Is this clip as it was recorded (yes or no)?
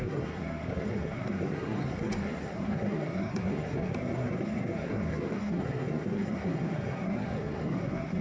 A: no